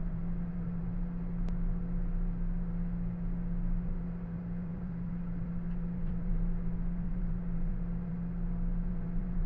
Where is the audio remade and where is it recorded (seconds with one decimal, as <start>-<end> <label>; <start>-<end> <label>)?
0.0-0.8 remade; 0.8-3.8 recorded; 3.8-8.2 remade; 8.2-8.9 recorded; 8.9-9.5 remade